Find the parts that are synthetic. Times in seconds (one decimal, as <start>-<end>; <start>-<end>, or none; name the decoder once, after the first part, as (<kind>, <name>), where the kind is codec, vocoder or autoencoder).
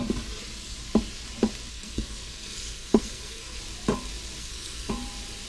1.7-3.6 (codec, SNAC); 4.4-4.9